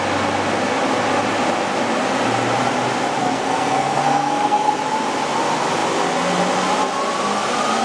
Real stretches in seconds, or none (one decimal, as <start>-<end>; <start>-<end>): 0.0-3.2; 4.7-7.8